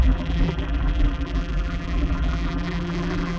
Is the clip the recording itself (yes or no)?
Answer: no